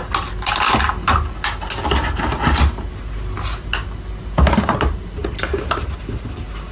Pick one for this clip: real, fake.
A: real